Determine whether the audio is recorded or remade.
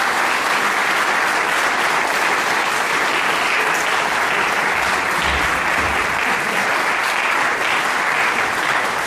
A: recorded